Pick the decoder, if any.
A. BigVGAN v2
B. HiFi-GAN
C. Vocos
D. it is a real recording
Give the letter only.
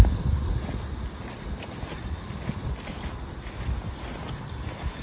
D